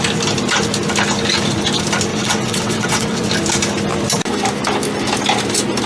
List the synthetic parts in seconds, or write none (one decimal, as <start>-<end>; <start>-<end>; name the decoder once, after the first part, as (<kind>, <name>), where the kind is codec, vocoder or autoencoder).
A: 2.1-3.3 (vocoder, WaveNeXt)

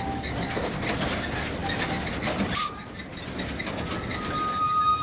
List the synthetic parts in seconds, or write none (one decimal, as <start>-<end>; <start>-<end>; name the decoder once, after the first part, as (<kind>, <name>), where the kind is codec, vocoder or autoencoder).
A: none

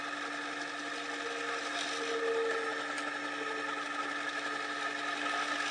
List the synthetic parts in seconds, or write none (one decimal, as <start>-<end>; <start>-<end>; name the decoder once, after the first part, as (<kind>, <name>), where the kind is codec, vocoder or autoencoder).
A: none

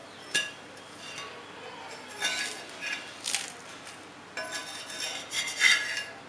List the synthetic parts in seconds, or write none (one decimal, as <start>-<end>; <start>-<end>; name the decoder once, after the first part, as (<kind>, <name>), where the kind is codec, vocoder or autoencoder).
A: none

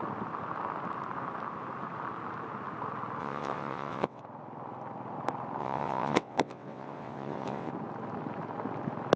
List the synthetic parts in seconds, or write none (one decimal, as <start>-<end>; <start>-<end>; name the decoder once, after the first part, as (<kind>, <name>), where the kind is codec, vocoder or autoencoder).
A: 3.2-4.2 (vocoder, WaveNeXt); 5.6-7.7

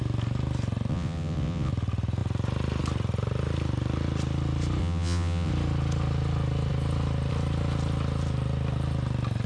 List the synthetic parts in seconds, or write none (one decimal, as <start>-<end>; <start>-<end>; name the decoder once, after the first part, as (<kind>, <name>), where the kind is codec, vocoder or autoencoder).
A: 0.9-1.7 (vocoder, WaveNeXt); 4.8-5.5

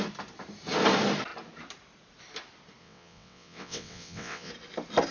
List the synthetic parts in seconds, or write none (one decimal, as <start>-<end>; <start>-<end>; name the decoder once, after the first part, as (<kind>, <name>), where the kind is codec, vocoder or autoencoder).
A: 2.8-4.5 (vocoder, WaveNeXt)